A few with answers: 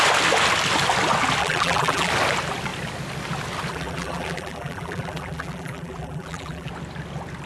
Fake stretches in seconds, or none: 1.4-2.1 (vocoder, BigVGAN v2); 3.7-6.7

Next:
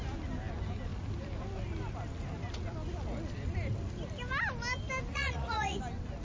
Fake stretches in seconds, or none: 5.1-5.8 (vocoder, Vocos)

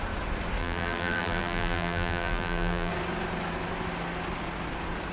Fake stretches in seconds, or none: 0.6-2.9 (vocoder, BigVGAN v2)

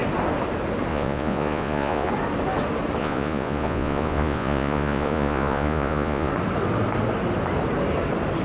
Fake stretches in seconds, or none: 0.9-2.1 (vocoder, Vocos); 3.0-6.3

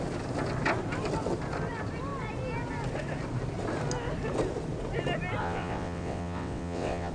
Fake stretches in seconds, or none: 5.4-7.1 (vocoder, WaveNeXt)

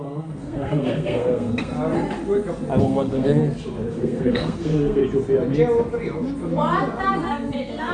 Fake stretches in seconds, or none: 0.0-1.7 (codec, SNAC); 2.8-3.4; 3.9-5.0; 7.0-7.9

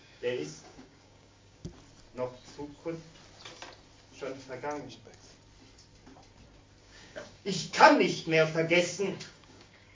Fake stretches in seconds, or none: 0.0-1.6 (codec, DAC); 6.8-9.9